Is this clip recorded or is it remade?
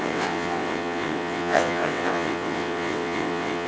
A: remade